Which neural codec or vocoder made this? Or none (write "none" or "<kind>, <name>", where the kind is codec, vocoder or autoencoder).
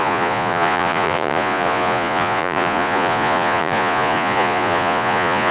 vocoder, Vocos